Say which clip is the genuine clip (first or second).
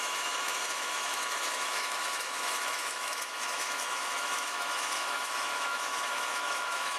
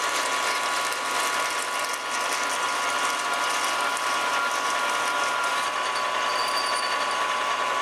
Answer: second